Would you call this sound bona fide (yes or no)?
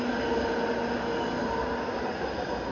yes